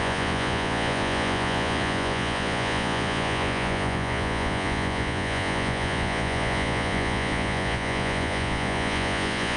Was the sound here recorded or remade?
remade